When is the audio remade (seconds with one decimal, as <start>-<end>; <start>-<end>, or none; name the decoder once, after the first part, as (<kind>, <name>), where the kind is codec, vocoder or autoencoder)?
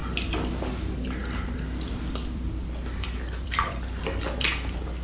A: 1.2-4.2 (vocoder, BigVGAN v2)